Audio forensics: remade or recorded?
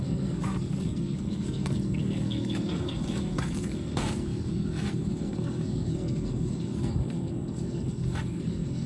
remade